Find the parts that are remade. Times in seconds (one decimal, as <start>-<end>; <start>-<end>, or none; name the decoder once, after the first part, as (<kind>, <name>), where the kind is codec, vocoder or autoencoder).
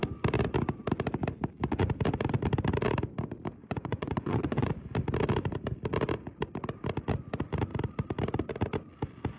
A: 3.6-4.7 (vocoder, Vocos)